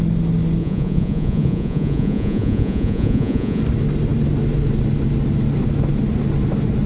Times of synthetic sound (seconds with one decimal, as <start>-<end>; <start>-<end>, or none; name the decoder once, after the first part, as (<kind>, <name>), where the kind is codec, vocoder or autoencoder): 0.6-3.6 (vocoder, Vocos)